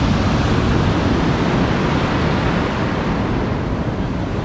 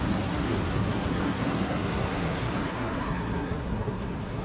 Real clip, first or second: first